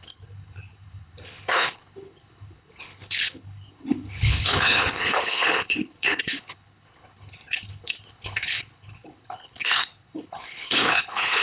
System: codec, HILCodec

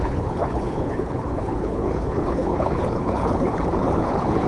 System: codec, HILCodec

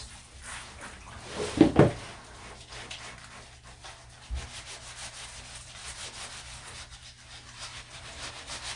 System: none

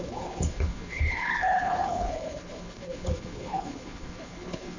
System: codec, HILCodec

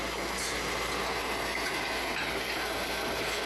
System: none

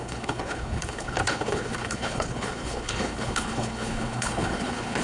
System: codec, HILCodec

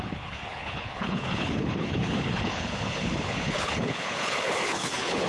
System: codec, HILCodec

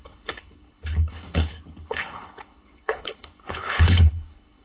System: codec, HILCodec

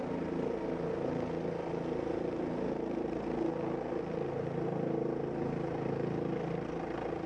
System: none